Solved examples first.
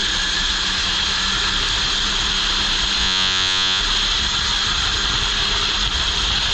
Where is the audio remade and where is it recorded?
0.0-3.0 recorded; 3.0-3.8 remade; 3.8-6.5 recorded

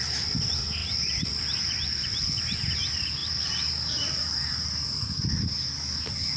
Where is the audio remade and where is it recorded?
0.0-0.8 recorded; 0.8-1.4 remade; 1.4-3.2 recorded; 3.2-5.4 remade; 5.4-6.4 recorded

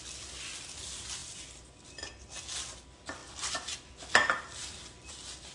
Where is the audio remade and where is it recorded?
0.0-3.2 recorded; 3.2-3.9 remade; 3.9-5.5 recorded

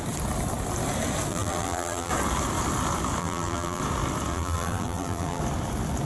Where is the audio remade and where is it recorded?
0.0-1.3 recorded; 1.3-2.1 remade; 2.1-3.2 recorded; 3.2-3.8 remade; 3.8-4.3 recorded; 4.3-5.4 remade; 5.4-6.1 recorded

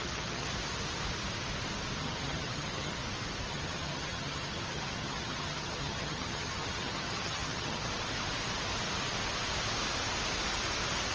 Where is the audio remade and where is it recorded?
0.0-0.5 remade; 0.5-2.0 recorded; 2.0-3.0 remade; 3.0-3.5 recorded; 3.5-7.9 remade; 7.9-11.1 recorded

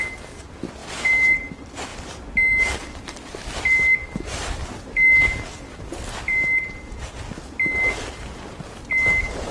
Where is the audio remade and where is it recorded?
0.0-0.8 recorded; 0.8-1.5 remade; 1.5-6.3 recorded; 6.3-7.1 remade; 7.1-9.5 recorded